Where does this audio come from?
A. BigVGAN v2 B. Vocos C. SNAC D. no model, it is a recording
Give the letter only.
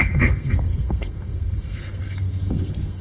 C